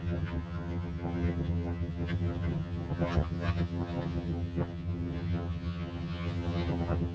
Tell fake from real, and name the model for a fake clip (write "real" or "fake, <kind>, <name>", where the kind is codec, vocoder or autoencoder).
fake, vocoder, HiFi-GAN